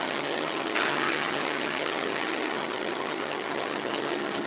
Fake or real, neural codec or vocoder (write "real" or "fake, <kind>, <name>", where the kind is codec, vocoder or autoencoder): fake, vocoder, HiFi-GAN